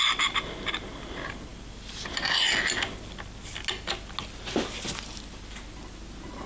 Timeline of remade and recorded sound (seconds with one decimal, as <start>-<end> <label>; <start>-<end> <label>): 0.0-6.5 recorded

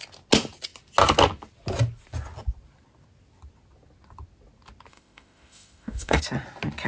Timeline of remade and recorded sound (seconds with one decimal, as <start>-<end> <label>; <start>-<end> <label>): 0.0-4.9 recorded; 4.9-6.2 remade; 6.2-6.9 recorded

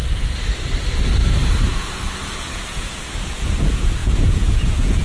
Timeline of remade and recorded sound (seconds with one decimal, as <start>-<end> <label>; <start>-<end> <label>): 0.0-1.7 recorded; 1.7-5.0 remade